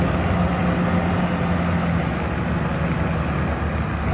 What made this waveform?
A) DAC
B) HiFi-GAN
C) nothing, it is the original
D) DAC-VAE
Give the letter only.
C